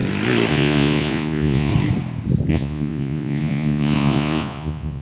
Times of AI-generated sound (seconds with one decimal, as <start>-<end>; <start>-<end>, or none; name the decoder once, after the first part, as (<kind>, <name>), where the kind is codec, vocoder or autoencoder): 0.5-1.7 (vocoder, Vocos); 2.5-5.0